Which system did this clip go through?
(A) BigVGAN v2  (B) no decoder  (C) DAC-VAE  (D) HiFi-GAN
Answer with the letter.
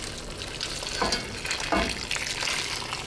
B